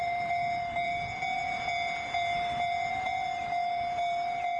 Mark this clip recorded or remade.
remade